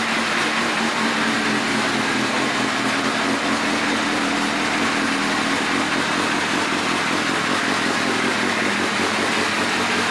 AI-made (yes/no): no